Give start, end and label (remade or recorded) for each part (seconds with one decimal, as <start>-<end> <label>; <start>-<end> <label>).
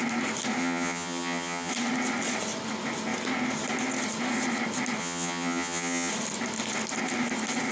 0.0-0.6 recorded; 0.6-1.7 remade; 1.7-5.0 recorded; 5.0-6.1 remade; 6.1-7.7 recorded